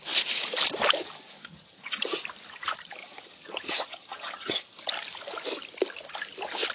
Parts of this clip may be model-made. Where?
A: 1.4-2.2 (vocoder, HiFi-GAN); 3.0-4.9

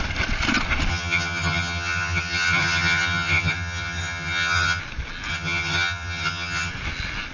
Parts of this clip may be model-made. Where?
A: 0.9-4.8 (vocoder, HiFi-GAN); 5.3-6.7

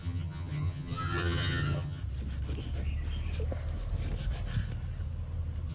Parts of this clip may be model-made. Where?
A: 0.0-2.0 (vocoder, HiFi-GAN)

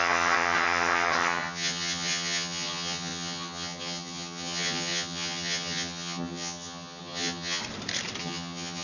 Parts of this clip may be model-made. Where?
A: 0.0-7.6 (vocoder, HiFi-GAN); 8.2-8.8

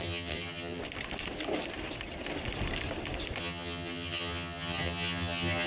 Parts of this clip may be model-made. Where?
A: 0.0-0.8 (vocoder, HiFi-GAN); 3.4-5.7

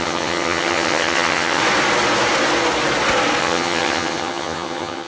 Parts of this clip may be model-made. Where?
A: 0.0-1.6 (vocoder, HiFi-GAN); 3.4-5.1

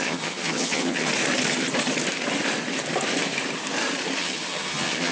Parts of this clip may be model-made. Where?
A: 0.0-1.1 (vocoder, HiFi-GAN); 4.2-5.1

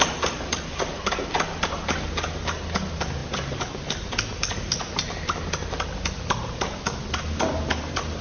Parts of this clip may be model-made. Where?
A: none